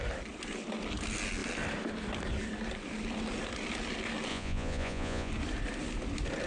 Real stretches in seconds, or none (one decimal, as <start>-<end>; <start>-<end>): 0.0-4.3; 5.3-6.5